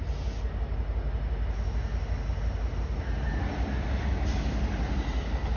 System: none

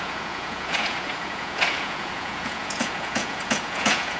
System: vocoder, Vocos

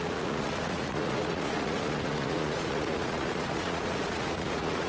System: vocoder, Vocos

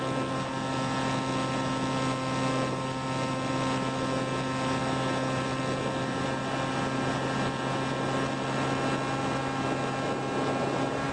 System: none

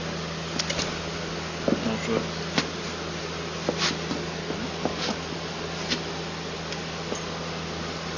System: none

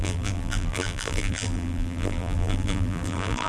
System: vocoder, BigVGAN v2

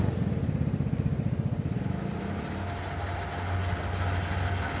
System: none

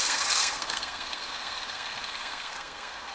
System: codec, SNAC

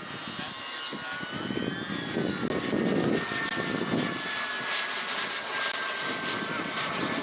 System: none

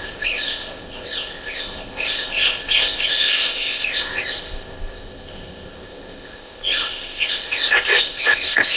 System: codec, ZipCodec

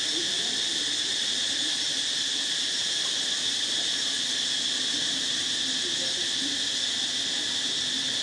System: none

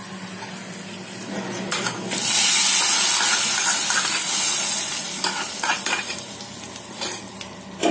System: none